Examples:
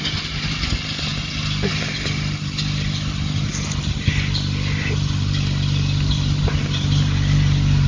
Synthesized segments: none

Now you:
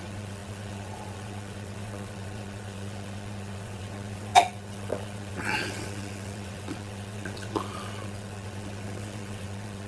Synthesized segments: 0.0-9.9 (vocoder, WaveNeXt)

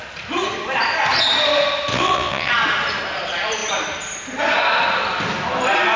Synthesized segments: 1.9-2.5 (vocoder, WaveNeXt)

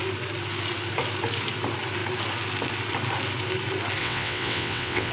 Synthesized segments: 4.0-5.1 (vocoder, WaveNeXt)

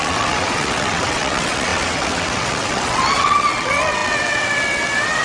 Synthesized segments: 0.0-5.2 (vocoder, WaveNeXt)

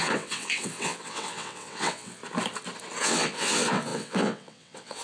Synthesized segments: 0.0-2.2 (vocoder, WaveNeXt); 3.0-5.0